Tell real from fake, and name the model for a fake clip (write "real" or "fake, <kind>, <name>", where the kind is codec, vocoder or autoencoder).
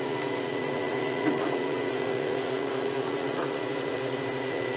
fake, vocoder, Vocos